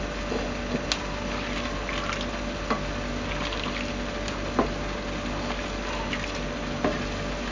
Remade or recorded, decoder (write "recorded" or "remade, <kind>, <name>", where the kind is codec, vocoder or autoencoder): recorded